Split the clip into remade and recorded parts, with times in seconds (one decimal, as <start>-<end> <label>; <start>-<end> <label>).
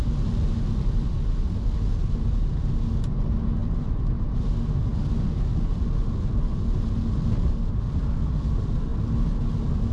0.0-9.9 recorded